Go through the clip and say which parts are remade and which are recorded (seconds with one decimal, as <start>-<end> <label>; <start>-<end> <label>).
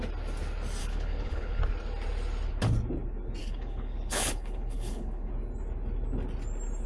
0.0-0.8 recorded; 0.8-1.6 remade; 1.6-3.4 recorded; 3.4-5.3 remade; 5.3-6.9 recorded